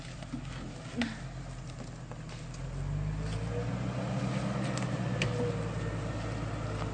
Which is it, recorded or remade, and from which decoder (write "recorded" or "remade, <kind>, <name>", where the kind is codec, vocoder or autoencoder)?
recorded